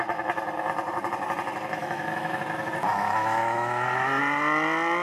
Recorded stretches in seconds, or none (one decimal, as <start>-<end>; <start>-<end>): 0.0-1.8; 2.4-2.9; 4.2-5.0